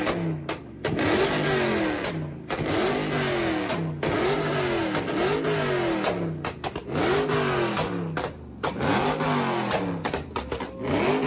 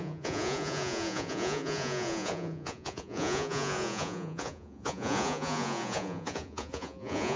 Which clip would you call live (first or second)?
first